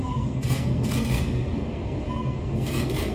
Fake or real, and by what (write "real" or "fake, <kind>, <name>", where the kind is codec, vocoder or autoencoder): fake, codec, SNAC